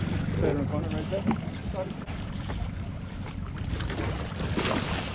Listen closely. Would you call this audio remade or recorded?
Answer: recorded